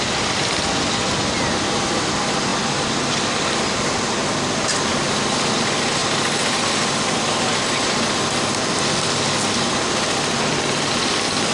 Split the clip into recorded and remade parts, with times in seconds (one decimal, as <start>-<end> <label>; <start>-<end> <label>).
0.0-11.5 recorded